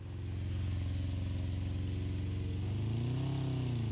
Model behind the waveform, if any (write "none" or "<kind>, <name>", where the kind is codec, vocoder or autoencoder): none